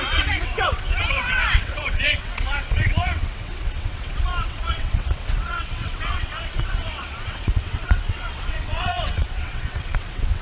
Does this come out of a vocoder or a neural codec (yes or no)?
yes